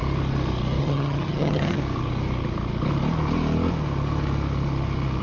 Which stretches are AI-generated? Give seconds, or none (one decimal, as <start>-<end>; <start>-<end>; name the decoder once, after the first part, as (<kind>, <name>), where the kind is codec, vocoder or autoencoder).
0.8-1.8 (vocoder, HiFi-GAN)